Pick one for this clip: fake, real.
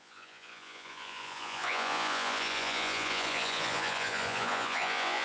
fake